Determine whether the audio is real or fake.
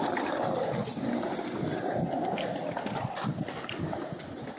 real